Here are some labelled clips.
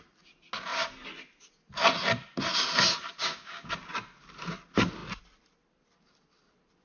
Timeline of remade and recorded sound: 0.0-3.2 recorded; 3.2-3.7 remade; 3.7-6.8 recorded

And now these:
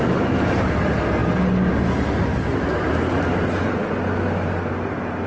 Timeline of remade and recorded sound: 0.0-5.3 recorded

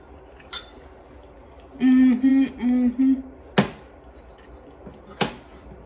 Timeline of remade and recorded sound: 0.0-5.9 recorded

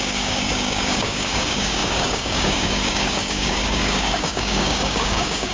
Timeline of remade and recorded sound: 0.0-5.5 remade

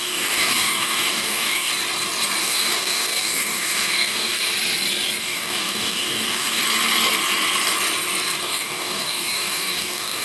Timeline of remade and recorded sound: 0.0-1.7 remade; 1.7-2.4 recorded; 2.4-4.5 remade; 4.5-5.2 recorded; 5.2-6.6 remade; 6.6-8.4 recorded; 8.4-10.2 remade

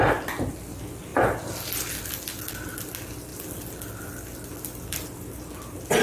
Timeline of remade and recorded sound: 0.0-6.0 recorded